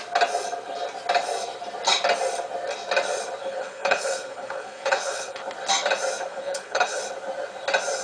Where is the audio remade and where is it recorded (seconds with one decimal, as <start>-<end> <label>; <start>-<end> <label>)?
0.0-3.4 recorded; 3.4-5.4 remade; 5.4-6.3 recorded; 6.3-7.0 remade; 7.0-8.0 recorded